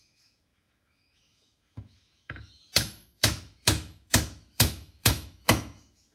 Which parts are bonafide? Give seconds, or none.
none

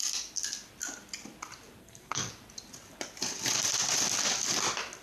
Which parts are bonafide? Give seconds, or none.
0.0-1.8; 2.3-5.0

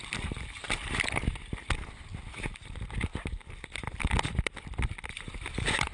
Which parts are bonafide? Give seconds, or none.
0.0-5.9

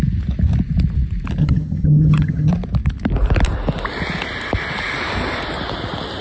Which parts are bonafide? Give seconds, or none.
0.0-1.4; 2.5-6.2

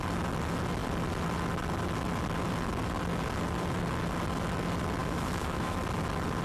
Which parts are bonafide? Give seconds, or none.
0.0-5.0; 5.8-6.4

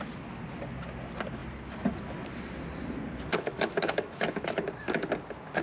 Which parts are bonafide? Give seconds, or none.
0.0-3.3; 4.6-5.6